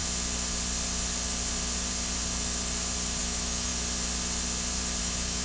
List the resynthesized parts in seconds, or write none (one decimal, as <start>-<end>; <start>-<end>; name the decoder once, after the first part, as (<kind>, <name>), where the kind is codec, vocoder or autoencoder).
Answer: 3.2-3.7 (autoencoder, DAC-VAE); 5.0-5.4